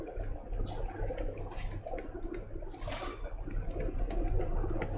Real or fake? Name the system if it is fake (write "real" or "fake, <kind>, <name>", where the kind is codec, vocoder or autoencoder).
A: real